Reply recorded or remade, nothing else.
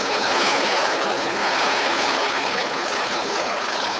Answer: remade